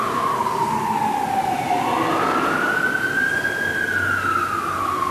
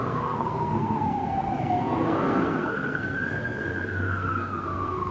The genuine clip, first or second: first